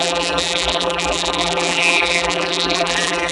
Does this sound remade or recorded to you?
remade